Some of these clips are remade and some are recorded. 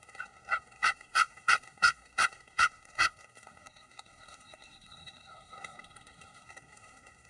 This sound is remade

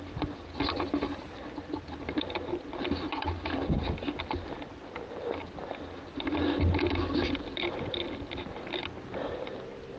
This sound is recorded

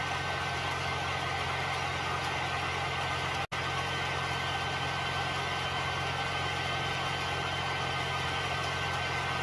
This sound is recorded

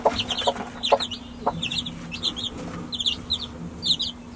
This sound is recorded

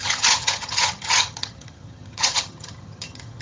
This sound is remade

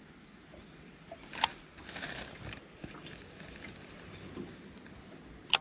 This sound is recorded